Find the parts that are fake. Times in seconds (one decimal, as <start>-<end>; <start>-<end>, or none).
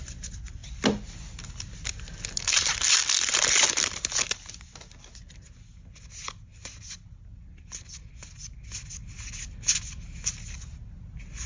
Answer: none